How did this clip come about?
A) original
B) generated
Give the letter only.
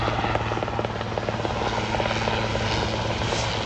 A